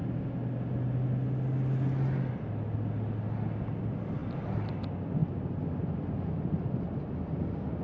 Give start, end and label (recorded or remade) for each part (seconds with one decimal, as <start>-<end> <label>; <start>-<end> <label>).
0.0-4.2 recorded; 4.2-4.7 remade; 4.7-7.8 recorded